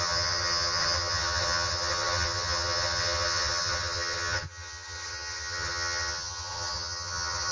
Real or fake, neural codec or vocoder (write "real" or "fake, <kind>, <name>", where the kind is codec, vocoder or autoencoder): fake, vocoder, HiFi-GAN